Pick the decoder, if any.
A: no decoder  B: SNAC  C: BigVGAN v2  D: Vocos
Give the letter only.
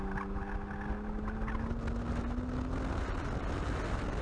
A